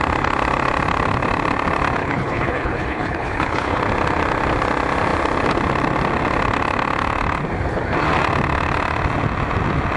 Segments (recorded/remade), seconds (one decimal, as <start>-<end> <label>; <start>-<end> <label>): 0.0-2.0 recorded; 2.0-3.8 remade; 3.8-10.0 recorded